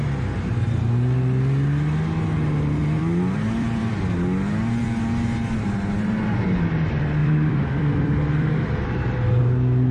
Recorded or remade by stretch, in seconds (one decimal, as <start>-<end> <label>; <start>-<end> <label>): 0.0-2.8 recorded; 2.8-3.9 remade; 3.9-7.2 recorded; 7.2-9.4 remade; 9.4-9.9 recorded